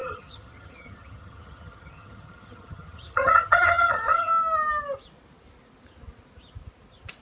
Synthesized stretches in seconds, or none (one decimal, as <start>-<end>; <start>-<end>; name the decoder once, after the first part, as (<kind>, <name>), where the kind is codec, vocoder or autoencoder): 0.0-4.3 (vocoder, HiFi-GAN)